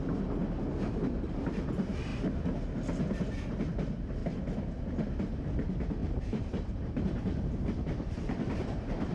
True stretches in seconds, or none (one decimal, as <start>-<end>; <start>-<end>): 0.0-1.4; 2.1-3.6; 4.2-5.4

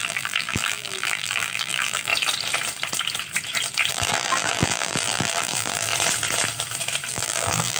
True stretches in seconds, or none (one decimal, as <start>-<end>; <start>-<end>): 2.1-3.9; 5.9-7.1